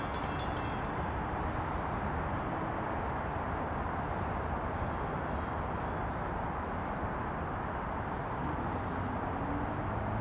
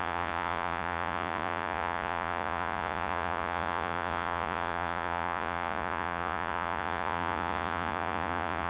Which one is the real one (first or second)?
first